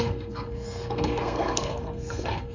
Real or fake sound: fake